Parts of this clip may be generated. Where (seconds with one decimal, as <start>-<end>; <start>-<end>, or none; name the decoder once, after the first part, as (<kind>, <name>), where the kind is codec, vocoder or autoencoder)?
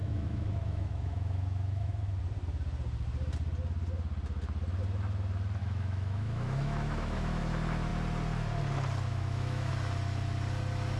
0.0-2.2 (autoencoder, DAC-VAE); 5.6-7.4; 9.1-9.7